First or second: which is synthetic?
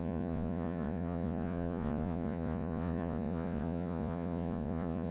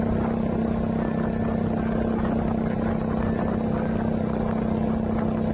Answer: first